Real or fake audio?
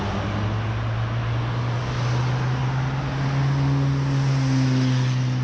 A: real